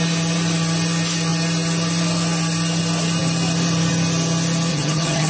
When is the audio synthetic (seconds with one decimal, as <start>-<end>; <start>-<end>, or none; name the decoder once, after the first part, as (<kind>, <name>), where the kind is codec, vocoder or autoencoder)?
4.7-5.3 (vocoder, HiFi-GAN)